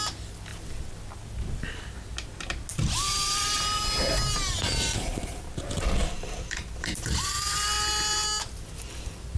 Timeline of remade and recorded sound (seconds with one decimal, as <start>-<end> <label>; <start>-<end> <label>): 0.0-2.7 recorded; 2.7-7.3 remade; 7.3-9.4 recorded